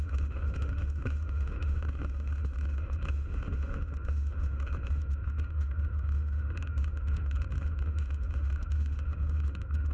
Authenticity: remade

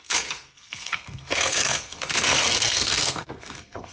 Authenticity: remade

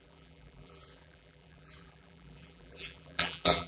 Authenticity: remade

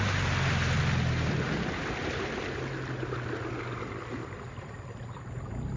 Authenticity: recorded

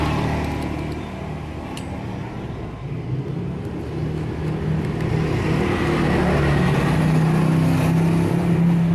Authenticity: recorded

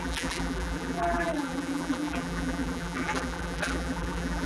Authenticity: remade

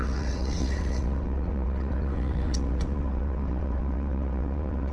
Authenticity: remade